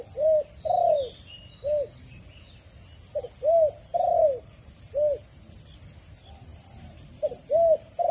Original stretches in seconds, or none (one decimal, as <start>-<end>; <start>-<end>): 0.0-3.9; 4.8-6.5; 7.5-8.1